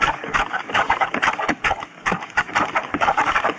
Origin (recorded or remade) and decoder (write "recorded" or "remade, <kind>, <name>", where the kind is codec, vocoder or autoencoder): remade, codec, DAC